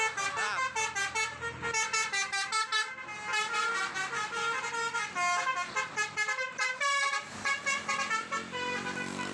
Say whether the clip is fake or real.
real